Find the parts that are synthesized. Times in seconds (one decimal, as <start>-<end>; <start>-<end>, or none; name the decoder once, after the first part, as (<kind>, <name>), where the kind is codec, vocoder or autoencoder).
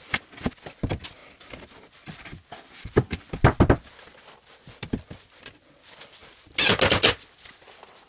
none